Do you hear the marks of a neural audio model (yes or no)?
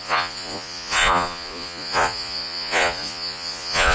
yes